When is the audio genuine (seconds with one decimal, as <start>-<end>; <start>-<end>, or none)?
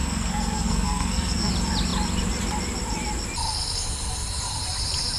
1.5-5.2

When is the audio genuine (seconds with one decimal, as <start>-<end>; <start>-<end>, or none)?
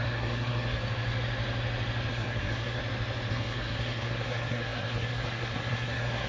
0.8-2.1; 2.8-3.3